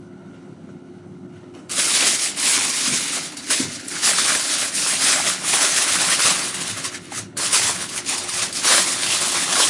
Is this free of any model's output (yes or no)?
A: no